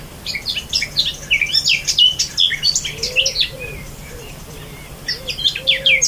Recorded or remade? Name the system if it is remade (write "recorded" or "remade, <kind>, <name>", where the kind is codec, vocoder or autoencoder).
recorded